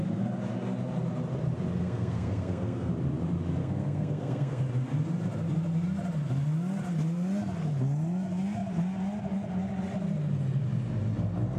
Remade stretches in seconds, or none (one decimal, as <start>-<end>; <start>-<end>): 1.8-2.9; 3.6-4.6